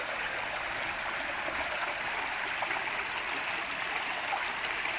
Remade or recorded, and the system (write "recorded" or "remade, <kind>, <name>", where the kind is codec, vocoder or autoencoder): recorded